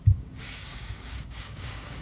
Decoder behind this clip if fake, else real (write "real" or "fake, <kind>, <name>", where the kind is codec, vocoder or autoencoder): fake, codec, DAC